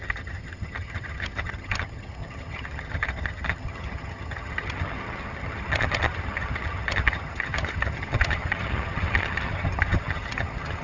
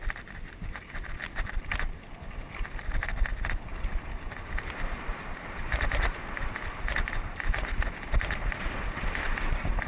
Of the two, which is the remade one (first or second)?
first